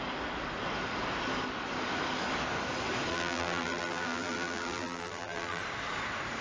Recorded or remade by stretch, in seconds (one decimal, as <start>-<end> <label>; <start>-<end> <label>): 0.0-3.1 recorded; 3.1-5.6 remade; 5.6-6.4 recorded